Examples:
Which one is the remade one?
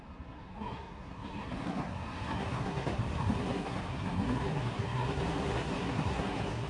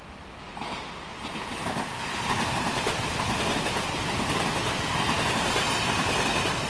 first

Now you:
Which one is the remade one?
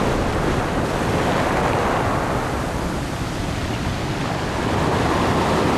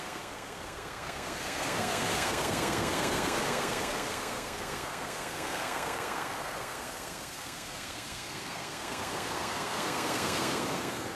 second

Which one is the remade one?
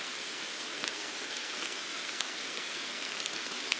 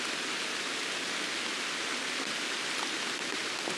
first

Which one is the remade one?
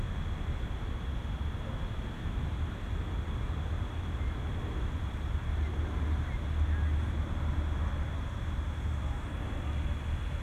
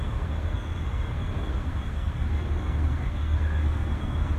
second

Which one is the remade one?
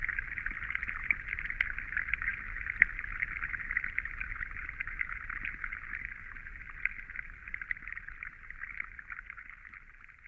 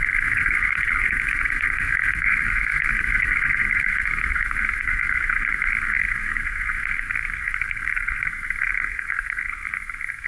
second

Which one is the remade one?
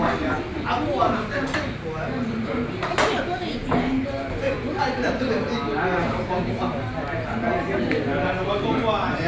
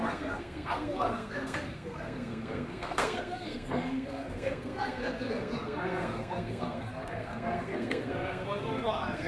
second